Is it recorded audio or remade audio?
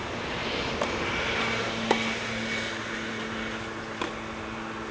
recorded